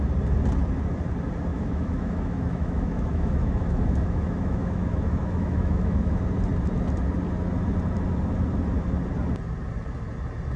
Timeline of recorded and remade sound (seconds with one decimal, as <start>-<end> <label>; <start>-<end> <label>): 0.0-1.5 recorded; 1.5-6.2 remade; 6.2-10.6 recorded

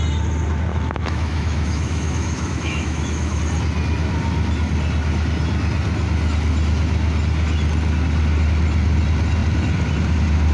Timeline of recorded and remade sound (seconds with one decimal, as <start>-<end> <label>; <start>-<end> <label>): 0.0-0.7 recorded; 0.7-3.4 remade; 3.4-10.5 recorded

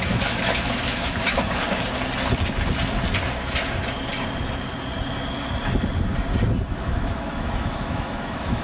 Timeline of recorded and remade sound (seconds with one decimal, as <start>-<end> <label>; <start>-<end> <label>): 0.0-1.6 remade; 1.6-6.7 recorded; 6.7-8.6 remade

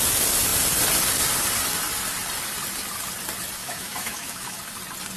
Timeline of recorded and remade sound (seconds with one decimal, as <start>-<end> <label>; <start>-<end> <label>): 0.0-3.6 recorded; 3.6-4.6 remade; 4.6-5.2 recorded

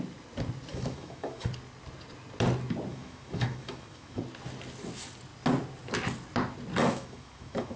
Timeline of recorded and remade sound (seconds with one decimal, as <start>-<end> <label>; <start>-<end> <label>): 0.0-0.7 recorded; 0.7-1.5 remade; 1.5-2.9 recorded; 2.9-4.2 remade; 4.2-6.8 recorded; 6.8-7.8 remade